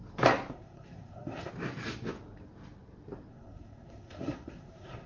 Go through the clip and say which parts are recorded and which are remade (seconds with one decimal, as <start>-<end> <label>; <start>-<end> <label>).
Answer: 0.0-0.5 recorded; 0.5-1.5 remade; 1.5-3.3 recorded; 3.3-5.1 remade